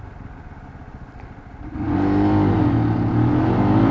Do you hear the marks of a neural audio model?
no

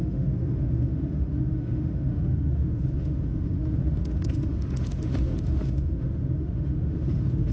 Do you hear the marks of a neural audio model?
yes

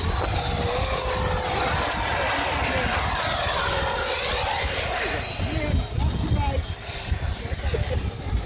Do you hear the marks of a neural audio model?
no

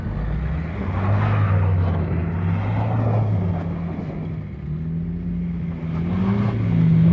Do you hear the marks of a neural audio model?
no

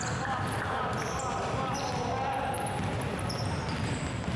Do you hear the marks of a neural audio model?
no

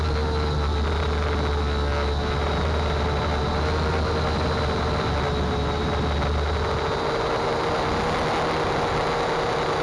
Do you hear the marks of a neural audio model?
no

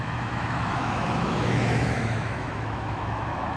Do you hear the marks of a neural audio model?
yes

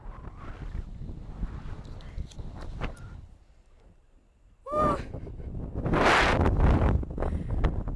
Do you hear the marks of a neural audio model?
no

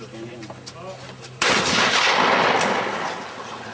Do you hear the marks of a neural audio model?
no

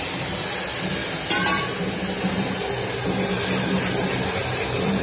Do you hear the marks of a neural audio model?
no